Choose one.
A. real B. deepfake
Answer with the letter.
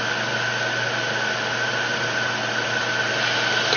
A